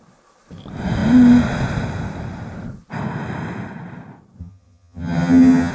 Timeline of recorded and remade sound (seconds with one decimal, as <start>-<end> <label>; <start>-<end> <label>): 0.0-4.4 recorded; 4.4-5.7 remade